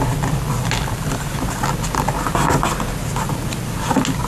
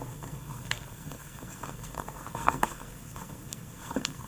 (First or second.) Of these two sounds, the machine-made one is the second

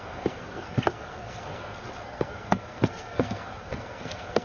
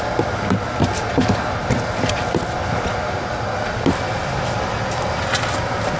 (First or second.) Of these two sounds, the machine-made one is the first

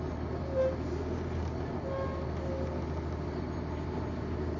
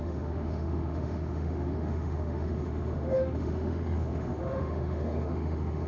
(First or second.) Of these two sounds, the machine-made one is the second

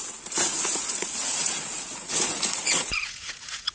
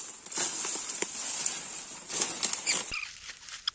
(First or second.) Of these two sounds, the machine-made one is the first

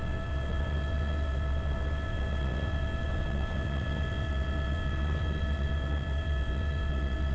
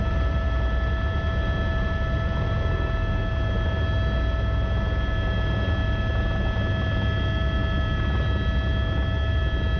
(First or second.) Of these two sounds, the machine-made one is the first